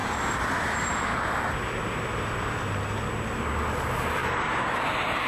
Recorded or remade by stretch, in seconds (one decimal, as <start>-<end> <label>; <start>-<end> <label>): 0.0-5.3 recorded